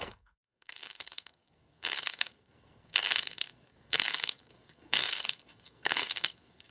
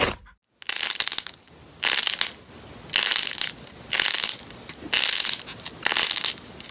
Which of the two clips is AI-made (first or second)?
first